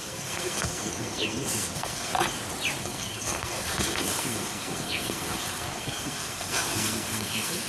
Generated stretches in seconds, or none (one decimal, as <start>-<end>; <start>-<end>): 0.0-2.1; 2.8-7.7

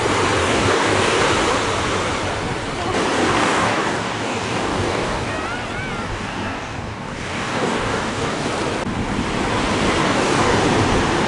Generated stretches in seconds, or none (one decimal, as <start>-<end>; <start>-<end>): 0.4-1.2; 3.2-5.3; 6.1-8.5; 10.0-10.6

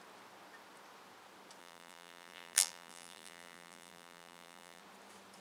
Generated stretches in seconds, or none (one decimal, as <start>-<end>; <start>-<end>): 1.6-4.8

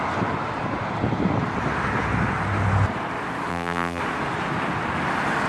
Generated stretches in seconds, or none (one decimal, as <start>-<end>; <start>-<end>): 3.5-4.0

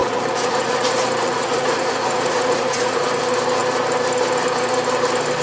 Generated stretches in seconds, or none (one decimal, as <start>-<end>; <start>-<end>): 0.0-3.2

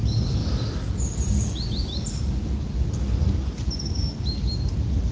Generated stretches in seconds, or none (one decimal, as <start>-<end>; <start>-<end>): none